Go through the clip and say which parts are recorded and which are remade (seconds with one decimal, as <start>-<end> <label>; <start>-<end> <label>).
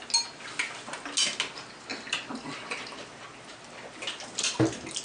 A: 0.0-5.0 recorded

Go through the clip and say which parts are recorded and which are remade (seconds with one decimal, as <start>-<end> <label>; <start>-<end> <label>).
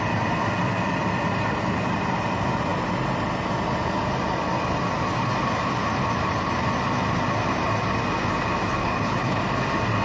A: 0.0-8.8 recorded; 8.8-9.4 remade; 9.4-10.0 recorded